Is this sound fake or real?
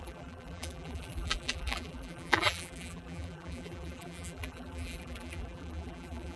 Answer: fake